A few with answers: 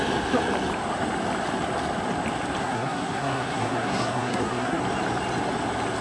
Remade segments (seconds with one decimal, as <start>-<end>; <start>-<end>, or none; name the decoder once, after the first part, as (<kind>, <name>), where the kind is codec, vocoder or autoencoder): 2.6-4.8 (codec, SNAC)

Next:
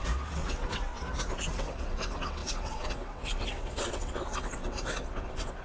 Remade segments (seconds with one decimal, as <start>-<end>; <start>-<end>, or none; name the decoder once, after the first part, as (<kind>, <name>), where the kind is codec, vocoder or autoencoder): 0.0-0.9 (vocoder, WaveNeXt); 1.5-5.6

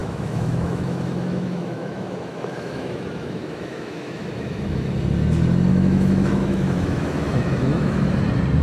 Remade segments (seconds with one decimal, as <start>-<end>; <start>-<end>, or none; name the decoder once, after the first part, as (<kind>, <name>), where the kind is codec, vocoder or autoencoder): 0.0-4.9 (autoencoder, DAC-VAE); 5.7-8.1

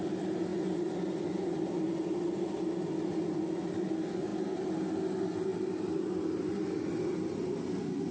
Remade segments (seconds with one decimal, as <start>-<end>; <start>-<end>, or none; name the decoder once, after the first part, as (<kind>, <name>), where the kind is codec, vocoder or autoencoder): none

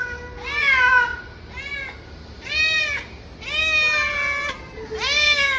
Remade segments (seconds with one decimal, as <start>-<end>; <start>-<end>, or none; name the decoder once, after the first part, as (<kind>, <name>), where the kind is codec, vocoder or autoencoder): none

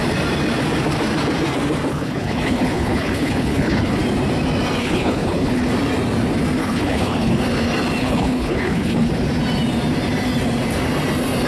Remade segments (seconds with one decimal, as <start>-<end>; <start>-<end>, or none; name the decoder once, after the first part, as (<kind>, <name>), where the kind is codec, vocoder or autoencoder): 1.9-4.0 (codec, HILCodec); 4.8-5.6; 6.6-7.4; 8.0-9.1

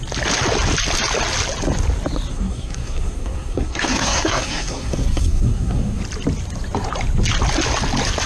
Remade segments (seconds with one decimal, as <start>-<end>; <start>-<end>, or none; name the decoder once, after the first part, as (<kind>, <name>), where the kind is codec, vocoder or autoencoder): 2.3-6.0 (codec, SNAC)